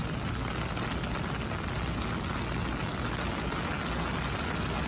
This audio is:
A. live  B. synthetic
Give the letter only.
A